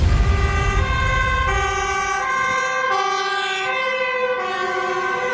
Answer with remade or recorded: recorded